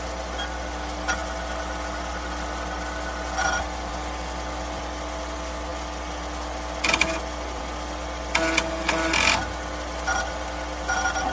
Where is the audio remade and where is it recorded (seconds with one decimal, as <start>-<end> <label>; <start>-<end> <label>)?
0.0-11.3 recorded

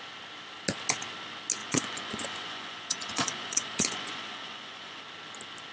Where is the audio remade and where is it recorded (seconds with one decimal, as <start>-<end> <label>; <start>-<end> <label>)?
0.0-1.6 recorded; 1.6-5.0 remade; 5.0-5.7 recorded

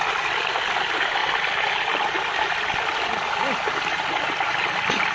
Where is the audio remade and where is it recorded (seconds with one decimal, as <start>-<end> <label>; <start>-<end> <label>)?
0.0-5.1 recorded

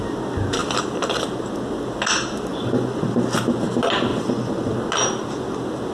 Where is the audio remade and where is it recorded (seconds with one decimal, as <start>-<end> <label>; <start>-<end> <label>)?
0.0-2.5 recorded; 2.5-3.2 remade; 3.2-4.1 recorded; 4.1-4.7 remade; 4.7-5.9 recorded

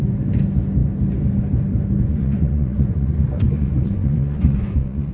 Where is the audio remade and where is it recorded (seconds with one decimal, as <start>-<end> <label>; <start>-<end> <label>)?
0.0-2.1 recorded; 2.1-5.1 remade